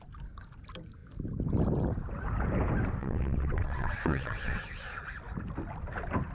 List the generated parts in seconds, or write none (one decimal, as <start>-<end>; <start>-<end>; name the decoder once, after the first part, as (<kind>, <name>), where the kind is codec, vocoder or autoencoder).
3.0-4.6 (vocoder, WaveNeXt)

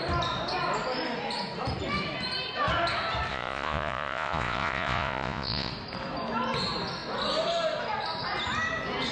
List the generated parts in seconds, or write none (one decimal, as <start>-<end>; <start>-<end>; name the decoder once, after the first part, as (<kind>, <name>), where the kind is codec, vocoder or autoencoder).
3.3-5.7 (vocoder, Vocos)

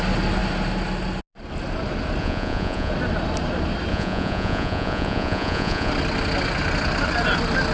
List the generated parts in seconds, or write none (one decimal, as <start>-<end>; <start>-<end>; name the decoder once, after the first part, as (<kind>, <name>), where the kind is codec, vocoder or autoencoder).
2.2-2.9 (vocoder, Vocos); 3.9-5.9

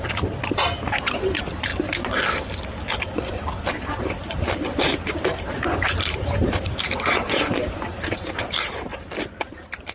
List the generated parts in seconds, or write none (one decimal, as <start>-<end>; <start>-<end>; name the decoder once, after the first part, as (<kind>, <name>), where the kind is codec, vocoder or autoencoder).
0.0-1.7 (vocoder, BigVGAN v2); 4.1-8.9

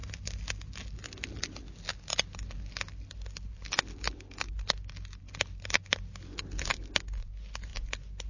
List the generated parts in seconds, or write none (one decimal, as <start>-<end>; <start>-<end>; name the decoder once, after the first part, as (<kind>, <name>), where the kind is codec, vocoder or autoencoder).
none

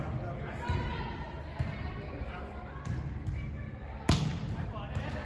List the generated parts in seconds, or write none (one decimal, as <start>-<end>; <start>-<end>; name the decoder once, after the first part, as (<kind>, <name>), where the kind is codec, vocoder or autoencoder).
0.9-2.9 (vocoder, BigVGAN v2); 4.3-5.2

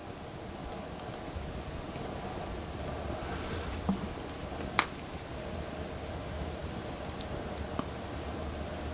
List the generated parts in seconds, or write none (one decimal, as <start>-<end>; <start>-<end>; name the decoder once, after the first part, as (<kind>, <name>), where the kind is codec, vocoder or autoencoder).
none

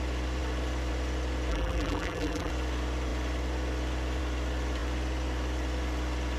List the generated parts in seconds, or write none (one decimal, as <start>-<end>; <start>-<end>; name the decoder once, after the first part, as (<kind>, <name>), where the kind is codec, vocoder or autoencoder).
1.5-2.5 (vocoder, BigVGAN v2)